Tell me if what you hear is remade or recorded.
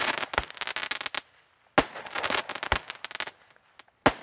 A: recorded